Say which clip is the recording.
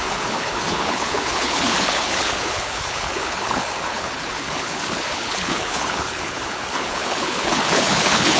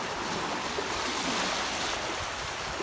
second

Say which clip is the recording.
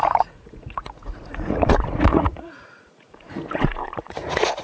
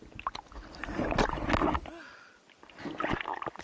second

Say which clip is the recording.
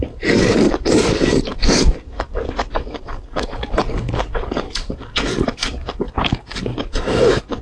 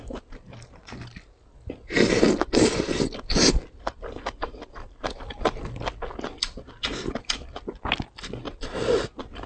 second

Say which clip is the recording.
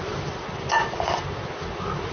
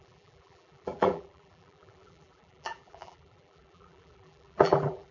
first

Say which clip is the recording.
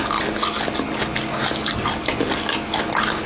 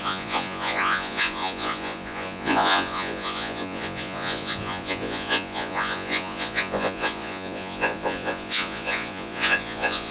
first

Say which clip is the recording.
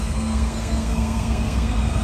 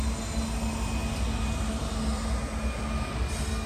second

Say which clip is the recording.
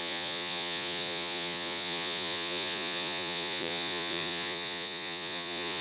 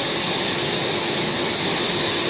second